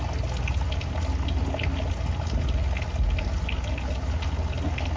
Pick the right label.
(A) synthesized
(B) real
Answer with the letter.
B